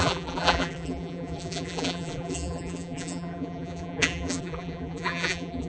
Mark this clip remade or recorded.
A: remade